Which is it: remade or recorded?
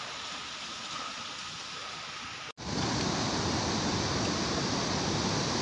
recorded